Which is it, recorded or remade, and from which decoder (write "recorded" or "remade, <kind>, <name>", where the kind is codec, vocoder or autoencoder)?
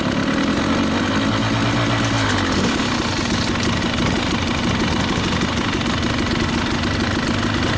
recorded